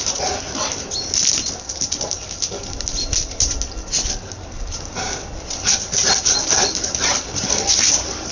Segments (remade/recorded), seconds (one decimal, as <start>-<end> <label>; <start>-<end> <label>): 0.0-3.0 recorded; 3.0-3.5 remade; 3.5-6.0 recorded; 6.0-8.3 remade